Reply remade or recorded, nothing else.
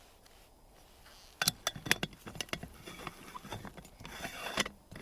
recorded